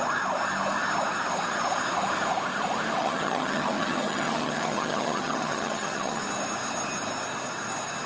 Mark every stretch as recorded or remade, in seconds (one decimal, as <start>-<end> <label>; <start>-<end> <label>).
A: 0.0-3.0 recorded; 3.0-6.2 remade; 6.2-8.1 recorded